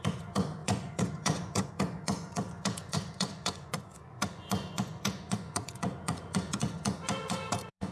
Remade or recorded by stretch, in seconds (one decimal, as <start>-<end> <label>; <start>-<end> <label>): 0.0-7.9 remade